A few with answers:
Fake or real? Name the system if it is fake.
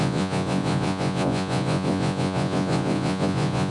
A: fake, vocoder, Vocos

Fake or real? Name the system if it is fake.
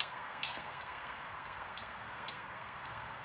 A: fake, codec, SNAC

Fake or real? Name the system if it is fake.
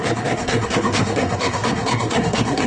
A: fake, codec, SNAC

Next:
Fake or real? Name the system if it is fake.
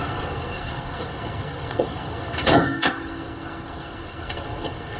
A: fake, codec, SNAC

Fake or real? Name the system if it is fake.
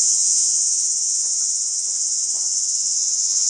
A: fake, vocoder, Vocos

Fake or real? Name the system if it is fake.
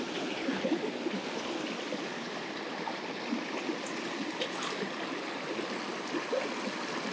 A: real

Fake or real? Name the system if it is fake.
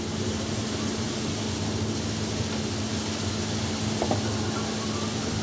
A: real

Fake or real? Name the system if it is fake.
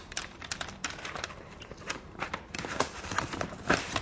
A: fake, vocoder, BigVGAN v2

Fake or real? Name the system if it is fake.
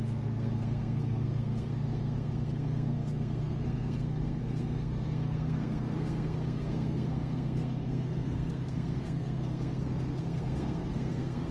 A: fake, codec, SNAC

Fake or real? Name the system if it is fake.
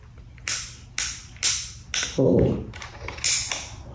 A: real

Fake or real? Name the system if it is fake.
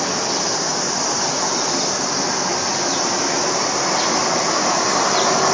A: real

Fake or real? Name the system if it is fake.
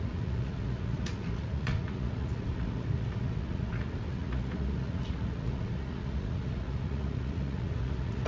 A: fake, vocoder, Vocos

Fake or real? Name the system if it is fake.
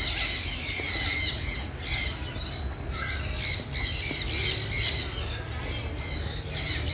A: real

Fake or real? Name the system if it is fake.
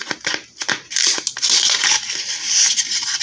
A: real